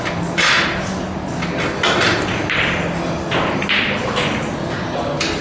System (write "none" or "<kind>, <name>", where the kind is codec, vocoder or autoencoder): none